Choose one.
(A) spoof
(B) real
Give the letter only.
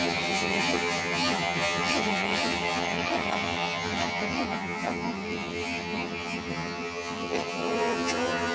A